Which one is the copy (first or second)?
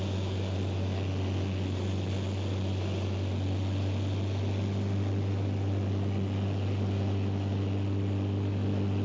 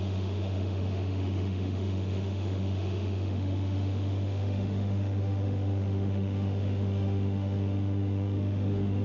second